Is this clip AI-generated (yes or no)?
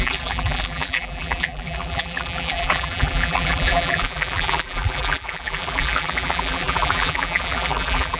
yes